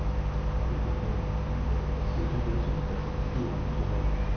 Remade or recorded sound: recorded